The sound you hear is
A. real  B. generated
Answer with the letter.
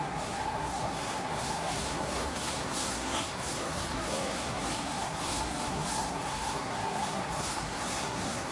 B